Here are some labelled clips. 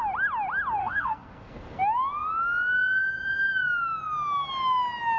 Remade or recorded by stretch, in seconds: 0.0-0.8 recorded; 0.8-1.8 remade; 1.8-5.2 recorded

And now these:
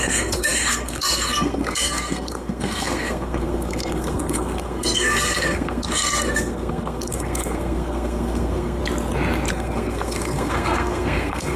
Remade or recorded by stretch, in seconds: 0.0-8.8 remade; 8.8-9.5 recorded; 9.5-11.6 remade

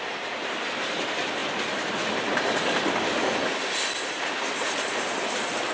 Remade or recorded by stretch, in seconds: 0.0-5.7 recorded

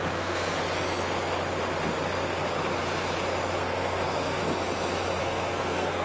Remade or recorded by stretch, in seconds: 0.0-0.6 remade; 0.6-3.6 recorded; 3.6-4.4 remade; 4.4-5.2 recorded; 5.2-6.0 remade